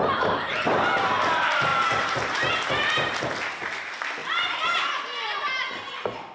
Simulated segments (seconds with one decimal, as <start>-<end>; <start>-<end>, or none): 1.7-3.2